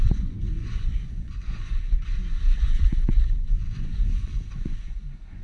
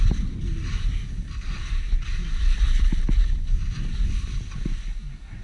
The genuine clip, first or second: second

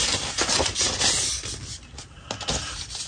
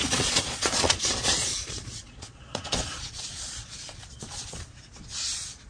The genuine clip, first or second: first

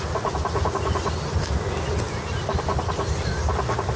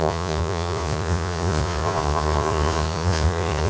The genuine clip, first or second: first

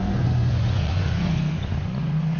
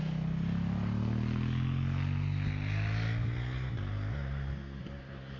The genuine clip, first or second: second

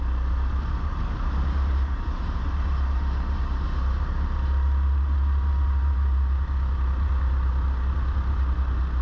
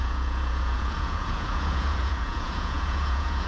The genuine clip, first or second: first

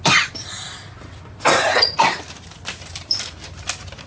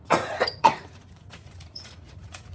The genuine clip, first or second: first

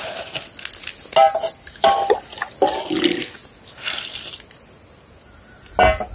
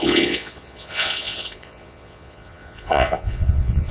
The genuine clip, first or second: first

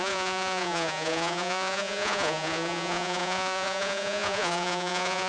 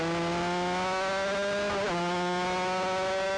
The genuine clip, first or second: second